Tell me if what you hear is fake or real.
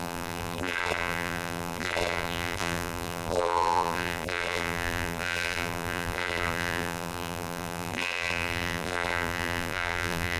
fake